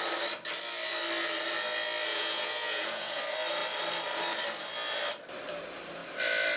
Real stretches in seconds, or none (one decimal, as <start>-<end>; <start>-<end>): 0.0-2.1; 3.2-6.6